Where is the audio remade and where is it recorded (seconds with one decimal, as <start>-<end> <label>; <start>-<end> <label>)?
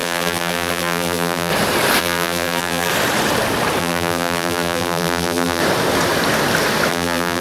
0.0-1.5 remade; 1.5-2.0 recorded; 2.0-2.9 remade; 2.9-3.8 recorded; 3.8-5.6 remade; 5.6-6.9 recorded; 6.9-7.4 remade